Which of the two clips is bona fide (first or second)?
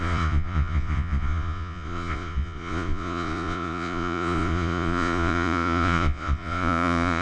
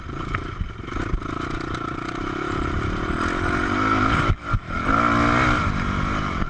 second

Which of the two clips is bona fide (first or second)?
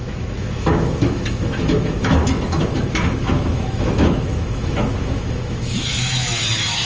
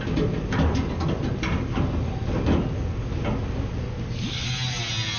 second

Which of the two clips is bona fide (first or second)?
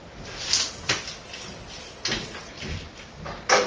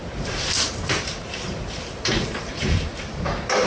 first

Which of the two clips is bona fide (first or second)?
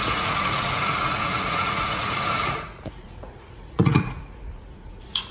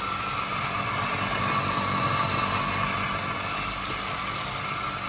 second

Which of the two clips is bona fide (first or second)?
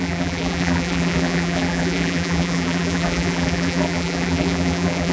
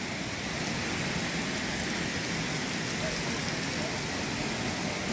second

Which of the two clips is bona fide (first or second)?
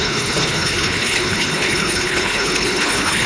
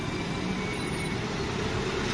second